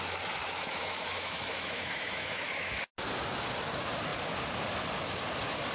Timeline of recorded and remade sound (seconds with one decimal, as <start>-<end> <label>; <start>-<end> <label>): 0.0-0.4 recorded; 0.4-2.8 remade; 2.8-5.7 recorded